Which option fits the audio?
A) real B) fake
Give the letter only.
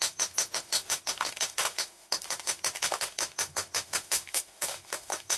B